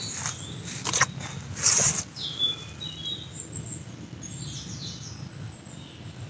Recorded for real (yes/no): yes